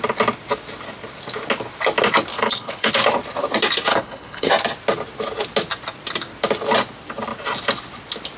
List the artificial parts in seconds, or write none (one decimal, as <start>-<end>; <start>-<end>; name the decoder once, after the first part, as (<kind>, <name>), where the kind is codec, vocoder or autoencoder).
2.3-2.9 (codec, HILCodec); 3.9-4.5